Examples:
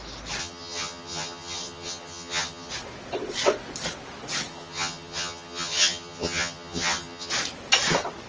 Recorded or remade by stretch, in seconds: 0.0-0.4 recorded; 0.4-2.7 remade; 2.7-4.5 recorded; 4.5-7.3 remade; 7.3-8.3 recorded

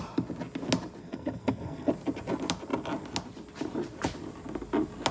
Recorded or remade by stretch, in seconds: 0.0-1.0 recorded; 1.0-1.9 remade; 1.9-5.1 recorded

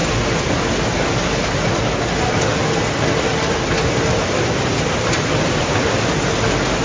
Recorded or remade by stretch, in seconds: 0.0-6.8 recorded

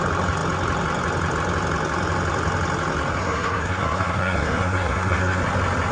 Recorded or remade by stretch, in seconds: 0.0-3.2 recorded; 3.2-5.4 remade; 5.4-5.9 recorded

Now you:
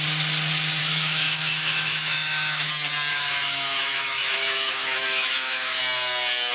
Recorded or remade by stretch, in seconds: 0.0-0.8 recorded; 0.8-2.7 remade; 2.7-3.1 recorded; 3.1-5.8 remade; 5.8-6.5 recorded

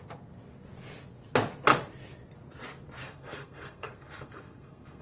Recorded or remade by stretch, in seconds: 0.0-3.0 recorded; 3.0-5.0 remade

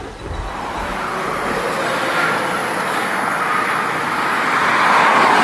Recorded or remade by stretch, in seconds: 0.0-5.4 recorded

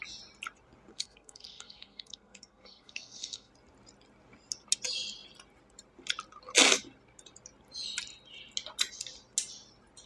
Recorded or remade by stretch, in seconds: 0.0-0.9 recorded; 0.9-3.5 remade; 3.5-10.1 recorded